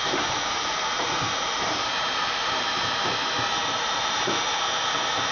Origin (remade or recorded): remade